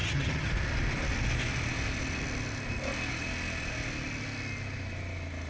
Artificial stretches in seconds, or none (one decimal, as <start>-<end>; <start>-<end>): 0.0-0.5